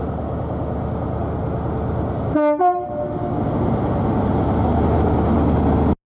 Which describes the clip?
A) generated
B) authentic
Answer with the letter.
B